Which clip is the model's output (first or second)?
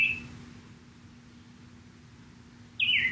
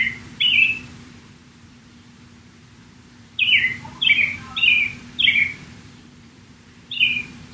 second